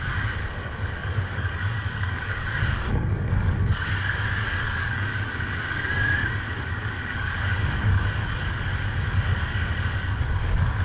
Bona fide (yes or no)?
no